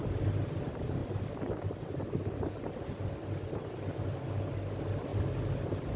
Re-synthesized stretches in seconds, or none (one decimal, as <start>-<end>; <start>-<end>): none